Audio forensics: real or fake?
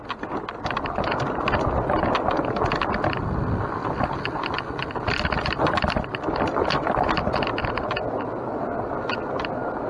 real